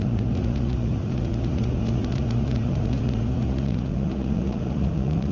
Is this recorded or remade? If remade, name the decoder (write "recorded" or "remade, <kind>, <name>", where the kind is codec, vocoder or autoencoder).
remade, vocoder, Vocos